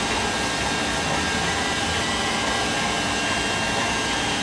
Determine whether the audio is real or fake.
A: real